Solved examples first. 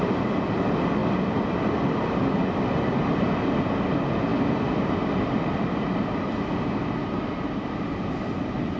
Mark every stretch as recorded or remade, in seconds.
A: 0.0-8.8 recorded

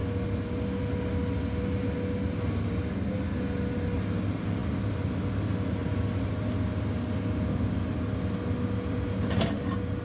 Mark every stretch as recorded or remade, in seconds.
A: 0.0-10.0 recorded

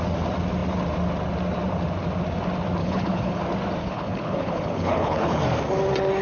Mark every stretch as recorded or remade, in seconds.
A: 0.0-2.8 recorded; 2.8-3.4 remade; 3.4-3.8 recorded; 3.8-5.4 remade; 5.4-6.2 recorded